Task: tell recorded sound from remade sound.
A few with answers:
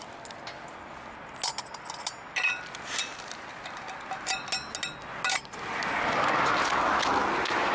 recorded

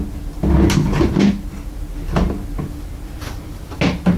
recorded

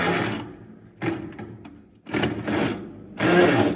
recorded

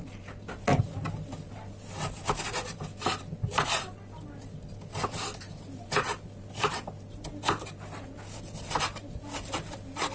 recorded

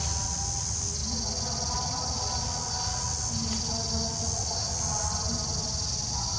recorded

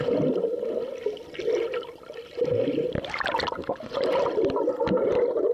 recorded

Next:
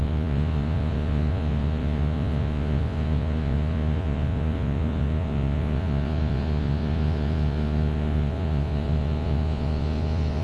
remade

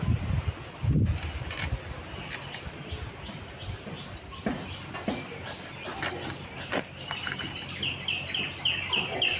recorded